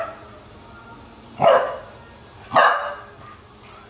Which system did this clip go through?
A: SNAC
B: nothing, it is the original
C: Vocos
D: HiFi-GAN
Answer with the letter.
B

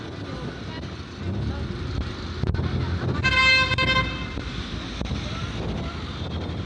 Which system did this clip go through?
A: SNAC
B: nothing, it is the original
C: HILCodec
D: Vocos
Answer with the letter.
B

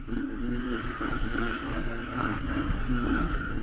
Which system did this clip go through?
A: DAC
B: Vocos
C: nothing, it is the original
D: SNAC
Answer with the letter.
D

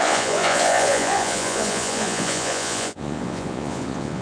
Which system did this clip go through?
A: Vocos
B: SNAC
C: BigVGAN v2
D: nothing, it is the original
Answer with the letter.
A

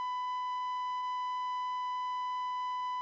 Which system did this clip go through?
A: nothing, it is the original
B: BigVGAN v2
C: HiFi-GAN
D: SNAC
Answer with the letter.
A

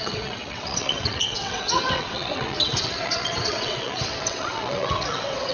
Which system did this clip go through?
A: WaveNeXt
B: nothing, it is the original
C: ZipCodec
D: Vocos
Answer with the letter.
A